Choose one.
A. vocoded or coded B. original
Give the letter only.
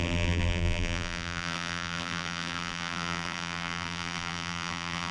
A